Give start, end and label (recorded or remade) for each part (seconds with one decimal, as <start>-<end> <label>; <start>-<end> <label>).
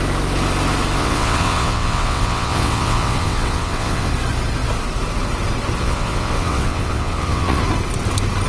0.0-1.0 recorded; 1.0-4.1 remade; 4.1-5.8 recorded; 5.8-7.6 remade; 7.6-8.5 recorded